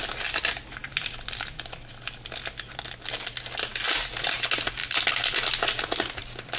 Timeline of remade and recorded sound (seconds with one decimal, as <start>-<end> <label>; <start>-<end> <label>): 0.0-6.6 recorded